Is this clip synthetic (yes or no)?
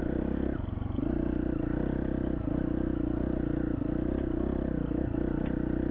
no